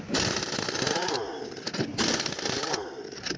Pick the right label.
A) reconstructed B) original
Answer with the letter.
A